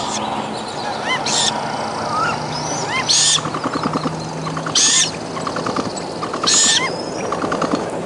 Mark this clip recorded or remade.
recorded